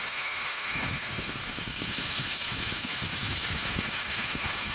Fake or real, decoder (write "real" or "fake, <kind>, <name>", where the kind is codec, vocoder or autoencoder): fake, autoencoder, DAC-VAE